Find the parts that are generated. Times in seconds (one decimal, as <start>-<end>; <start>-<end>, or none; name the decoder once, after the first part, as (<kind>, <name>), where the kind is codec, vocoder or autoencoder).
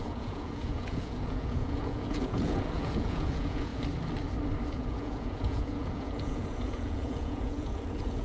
0.0-3.7 (vocoder, Vocos); 4.7-8.2